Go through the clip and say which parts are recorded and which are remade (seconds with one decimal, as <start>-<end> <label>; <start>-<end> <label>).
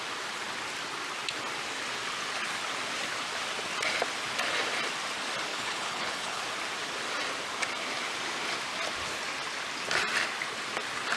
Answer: 0.0-5.5 recorded; 5.5-6.4 remade; 6.4-11.2 recorded